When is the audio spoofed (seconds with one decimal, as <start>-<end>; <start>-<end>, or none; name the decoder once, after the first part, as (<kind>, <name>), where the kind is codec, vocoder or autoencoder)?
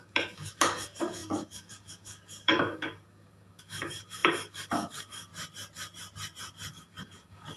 0.0-5.3 (codec, DAC); 6.7-7.6